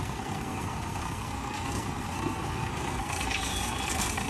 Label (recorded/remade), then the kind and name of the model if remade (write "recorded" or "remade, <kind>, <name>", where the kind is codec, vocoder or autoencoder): remade, codec, SNAC